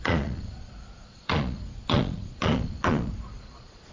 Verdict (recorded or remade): remade